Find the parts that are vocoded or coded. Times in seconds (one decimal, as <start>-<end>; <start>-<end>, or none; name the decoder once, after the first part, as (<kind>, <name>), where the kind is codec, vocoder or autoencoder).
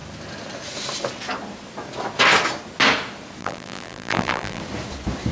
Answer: 3.4-4.6 (vocoder, BigVGAN v2)